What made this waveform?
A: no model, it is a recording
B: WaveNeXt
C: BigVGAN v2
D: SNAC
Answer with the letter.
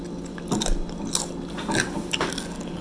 A